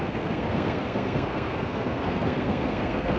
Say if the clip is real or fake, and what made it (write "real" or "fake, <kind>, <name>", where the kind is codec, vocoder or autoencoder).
fake, codec, SNAC